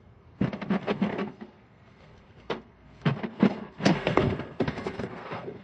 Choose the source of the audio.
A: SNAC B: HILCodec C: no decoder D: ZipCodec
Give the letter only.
A